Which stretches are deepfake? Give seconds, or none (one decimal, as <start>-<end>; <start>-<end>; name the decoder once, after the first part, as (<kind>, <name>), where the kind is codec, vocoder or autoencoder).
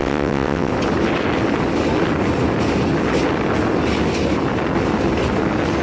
0.0-0.7 (vocoder, WaveNeXt)